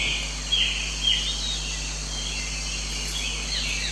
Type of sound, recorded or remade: recorded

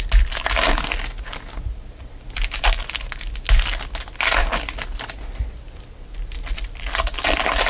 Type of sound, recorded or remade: recorded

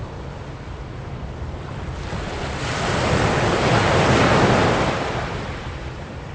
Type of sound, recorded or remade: recorded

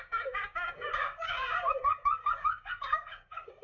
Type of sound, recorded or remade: remade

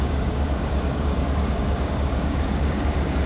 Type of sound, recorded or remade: remade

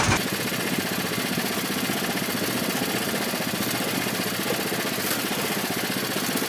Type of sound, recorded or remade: recorded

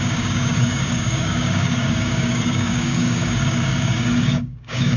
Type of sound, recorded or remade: remade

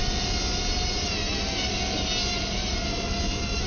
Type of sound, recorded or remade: recorded